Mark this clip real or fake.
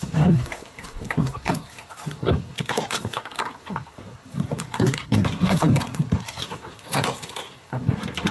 fake